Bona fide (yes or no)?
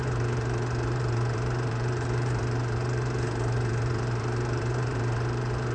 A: no